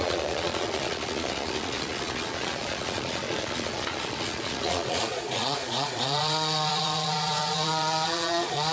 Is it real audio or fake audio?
fake